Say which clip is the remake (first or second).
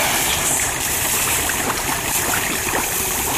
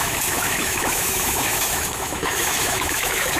second